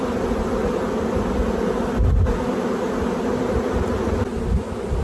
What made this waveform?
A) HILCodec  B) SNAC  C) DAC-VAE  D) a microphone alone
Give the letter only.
D